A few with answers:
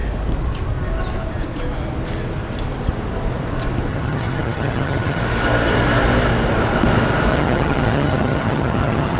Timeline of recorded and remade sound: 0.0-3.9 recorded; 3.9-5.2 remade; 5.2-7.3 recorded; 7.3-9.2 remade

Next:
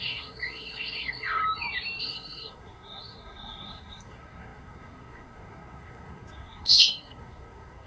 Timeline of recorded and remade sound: 0.0-1.4 remade; 1.4-2.0 recorded; 2.0-7.9 remade

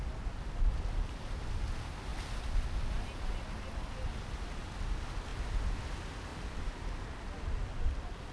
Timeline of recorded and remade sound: 0.0-8.3 recorded

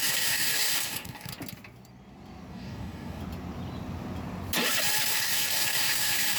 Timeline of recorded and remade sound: 0.0-1.3 remade; 1.3-2.5 recorded; 2.5-3.2 remade; 3.2-5.1 recorded; 5.1-6.4 remade